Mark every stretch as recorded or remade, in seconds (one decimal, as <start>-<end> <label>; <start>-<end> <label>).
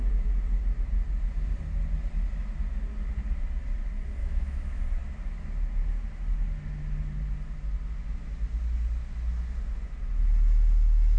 0.0-4.2 recorded; 4.2-4.8 remade; 4.8-11.2 recorded